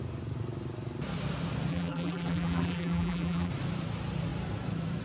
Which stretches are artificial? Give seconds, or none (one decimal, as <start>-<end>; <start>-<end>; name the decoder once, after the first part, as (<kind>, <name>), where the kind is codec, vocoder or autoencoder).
1.7-3.5 (vocoder, BigVGAN v2)